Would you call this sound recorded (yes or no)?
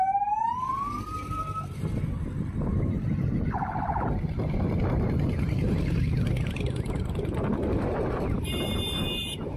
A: no